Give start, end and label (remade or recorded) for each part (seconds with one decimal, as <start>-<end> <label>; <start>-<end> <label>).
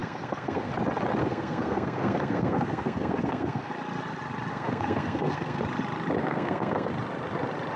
0.0-0.7 remade; 0.7-1.2 recorded; 1.2-3.7 remade; 3.7-4.5 recorded; 4.5-5.6 remade; 5.6-6.2 recorded; 6.2-6.9 remade; 6.9-7.8 recorded